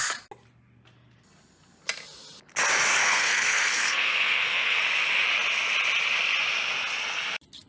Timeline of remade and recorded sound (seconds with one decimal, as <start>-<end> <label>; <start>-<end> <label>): 0.0-3.0 recorded; 3.0-4.8 remade; 4.8-7.7 recorded